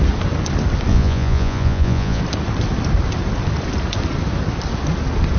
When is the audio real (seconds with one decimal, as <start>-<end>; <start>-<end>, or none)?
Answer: 0.0-0.9; 2.2-5.4

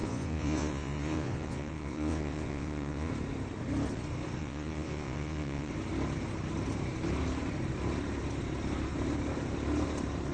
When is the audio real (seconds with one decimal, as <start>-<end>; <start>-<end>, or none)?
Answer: 3.1-4.4; 5.7-10.3

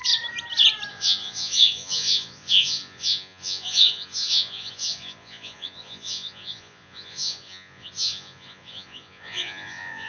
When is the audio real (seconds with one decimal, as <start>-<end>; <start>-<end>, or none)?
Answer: 0.0-0.9

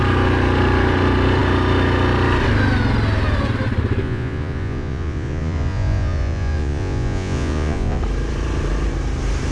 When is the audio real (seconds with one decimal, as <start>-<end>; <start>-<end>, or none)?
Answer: 0.0-4.0; 8.0-9.5

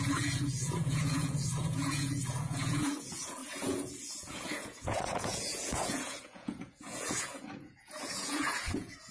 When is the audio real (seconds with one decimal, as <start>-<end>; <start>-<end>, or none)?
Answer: none

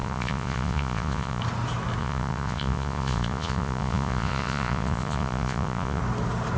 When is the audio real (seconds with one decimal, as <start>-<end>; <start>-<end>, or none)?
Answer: 1.4-2.0; 6.0-6.6

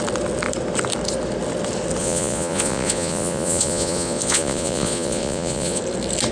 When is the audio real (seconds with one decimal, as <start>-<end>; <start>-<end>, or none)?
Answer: 0.0-2.0; 5.8-6.3

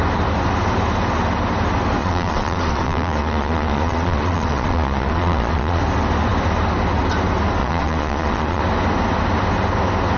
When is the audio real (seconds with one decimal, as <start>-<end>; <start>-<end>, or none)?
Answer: 0.0-2.0; 5.8-7.6; 8.6-10.2